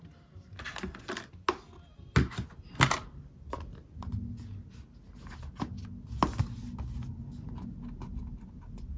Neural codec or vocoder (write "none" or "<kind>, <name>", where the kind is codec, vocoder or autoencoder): none